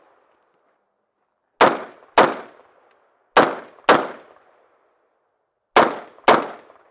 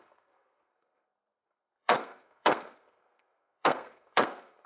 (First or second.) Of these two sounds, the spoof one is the second